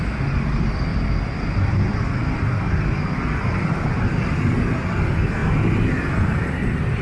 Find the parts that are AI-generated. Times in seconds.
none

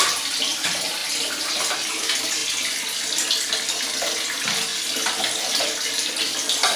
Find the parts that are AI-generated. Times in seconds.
none

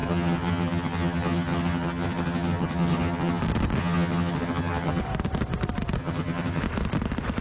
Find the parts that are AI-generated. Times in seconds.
0.0-3.4; 3.8-5.0; 6.0-6.6

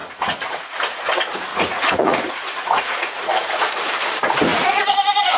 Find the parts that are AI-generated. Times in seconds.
0.0-1.0; 1.5-3.6; 4.5-5.4